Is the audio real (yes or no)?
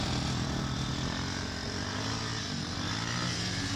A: no